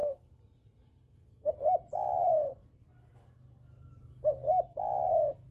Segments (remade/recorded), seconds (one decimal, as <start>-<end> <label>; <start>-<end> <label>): 0.0-1.5 remade; 1.5-5.5 recorded